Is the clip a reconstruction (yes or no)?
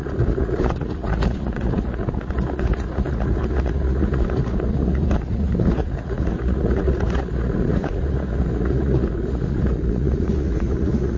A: yes